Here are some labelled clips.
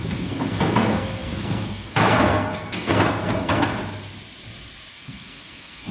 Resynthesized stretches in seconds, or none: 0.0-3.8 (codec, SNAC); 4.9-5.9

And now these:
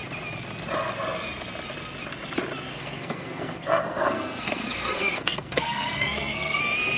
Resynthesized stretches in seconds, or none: 2.7-6.6 (codec, SNAC)

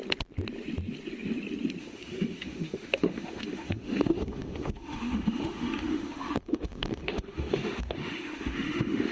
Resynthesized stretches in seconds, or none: 1.8-9.1 (autoencoder, DAC-VAE)

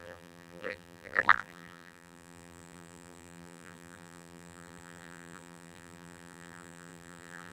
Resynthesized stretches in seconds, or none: 0.0-7.5 (vocoder, BigVGAN v2)

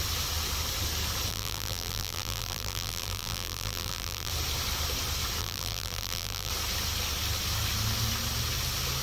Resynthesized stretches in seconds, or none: 1.3-4.3 (vocoder, BigVGAN v2); 5.4-6.5

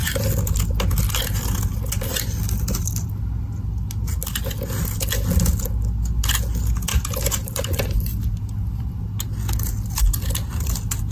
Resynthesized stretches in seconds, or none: 6.9-8.9 (vocoder, BigVGAN v2)

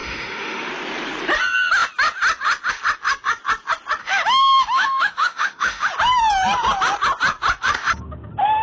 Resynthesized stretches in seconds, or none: 0.0-0.7 (autoencoder, DAC-VAE); 4.0-5.9

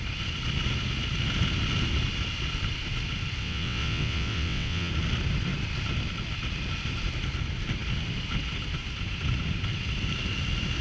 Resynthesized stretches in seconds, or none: 3.4-4.9 (vocoder, WaveNeXt)